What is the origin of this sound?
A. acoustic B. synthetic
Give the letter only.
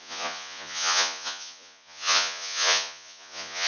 B